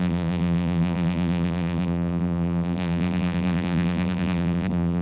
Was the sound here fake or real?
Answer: fake